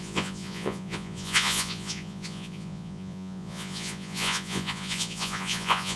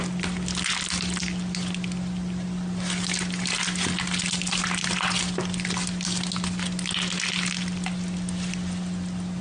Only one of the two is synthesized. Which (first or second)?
first